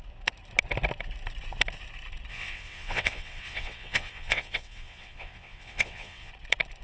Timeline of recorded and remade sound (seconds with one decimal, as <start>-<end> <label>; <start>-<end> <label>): 0.0-2.3 recorded; 2.3-6.3 remade; 6.3-6.8 recorded